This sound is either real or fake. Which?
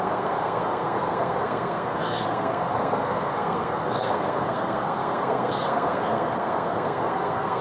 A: fake